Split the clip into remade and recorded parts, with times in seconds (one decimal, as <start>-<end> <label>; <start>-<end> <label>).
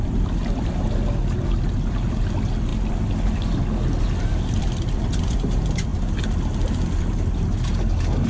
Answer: 0.0-8.3 recorded